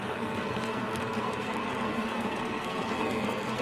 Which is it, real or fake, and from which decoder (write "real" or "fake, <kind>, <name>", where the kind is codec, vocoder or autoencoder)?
fake, codec, SNAC